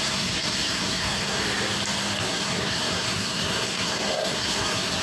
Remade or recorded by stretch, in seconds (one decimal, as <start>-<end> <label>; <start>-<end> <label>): 0.0-1.4 remade; 1.4-2.2 recorded; 2.2-5.0 remade